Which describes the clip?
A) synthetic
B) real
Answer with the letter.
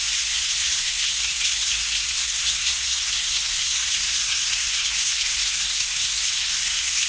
A